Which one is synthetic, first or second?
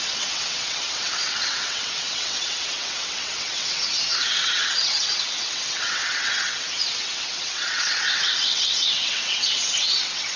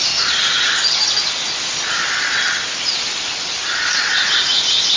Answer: first